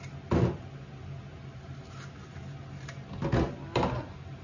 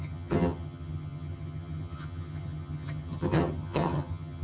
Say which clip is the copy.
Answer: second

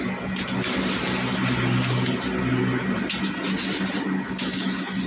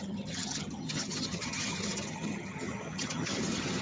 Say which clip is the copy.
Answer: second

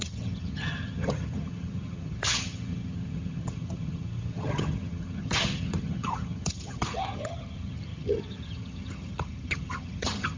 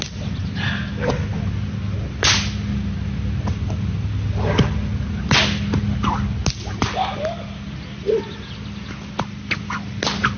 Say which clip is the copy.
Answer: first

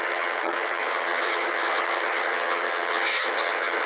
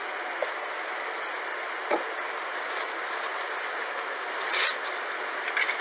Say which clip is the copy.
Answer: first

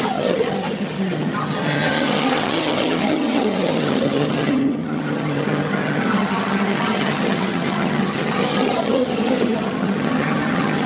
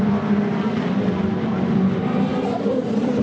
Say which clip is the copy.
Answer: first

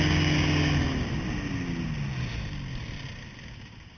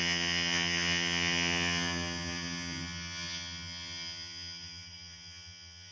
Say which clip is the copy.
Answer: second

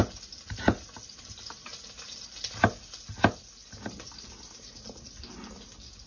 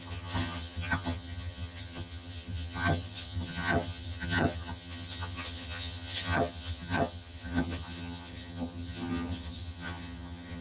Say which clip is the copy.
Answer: second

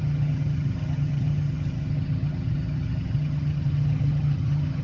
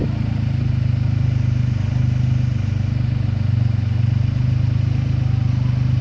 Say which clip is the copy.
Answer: first